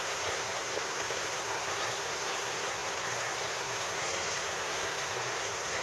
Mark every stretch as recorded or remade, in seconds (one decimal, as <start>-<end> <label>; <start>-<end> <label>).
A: 0.0-5.8 remade